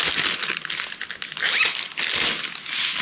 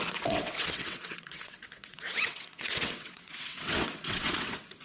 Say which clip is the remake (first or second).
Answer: second